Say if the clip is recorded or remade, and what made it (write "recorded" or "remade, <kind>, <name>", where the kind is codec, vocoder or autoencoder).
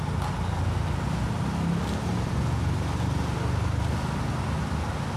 recorded